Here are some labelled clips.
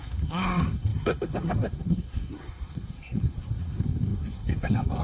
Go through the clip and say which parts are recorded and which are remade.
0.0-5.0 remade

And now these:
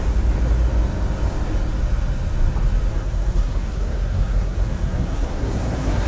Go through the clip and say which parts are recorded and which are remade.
0.0-2.9 recorded; 2.9-6.1 remade

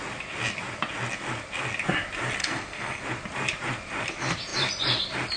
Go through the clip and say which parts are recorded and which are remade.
0.0-2.4 recorded; 2.4-3.0 remade; 3.0-5.4 recorded

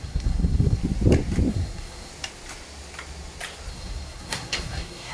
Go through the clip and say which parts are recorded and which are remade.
0.0-0.8 remade; 0.8-1.5 recorded; 1.5-2.1 remade; 2.1-3.7 recorded; 3.7-5.1 remade

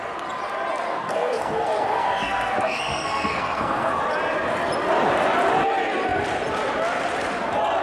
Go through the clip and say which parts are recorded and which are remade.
0.0-0.9 recorded; 0.9-4.0 remade; 4.0-7.8 recorded

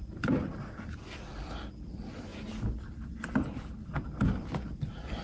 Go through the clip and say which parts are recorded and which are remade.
0.0-5.2 recorded

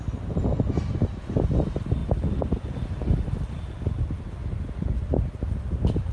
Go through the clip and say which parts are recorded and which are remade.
0.0-6.1 recorded

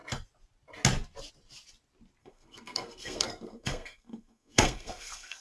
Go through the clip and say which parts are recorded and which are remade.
0.0-2.2 recorded; 2.2-5.4 remade